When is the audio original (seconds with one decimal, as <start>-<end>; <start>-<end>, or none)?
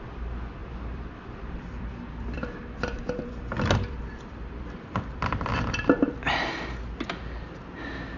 0.0-0.6; 5.5-8.2